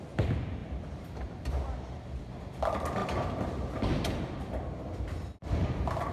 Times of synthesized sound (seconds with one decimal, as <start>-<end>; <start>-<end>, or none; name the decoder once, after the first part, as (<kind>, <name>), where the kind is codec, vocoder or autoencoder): none